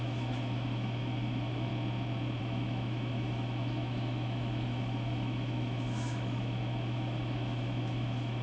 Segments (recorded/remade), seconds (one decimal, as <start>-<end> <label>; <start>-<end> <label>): 0.0-1.7 remade; 1.7-2.4 recorded; 2.4-8.4 remade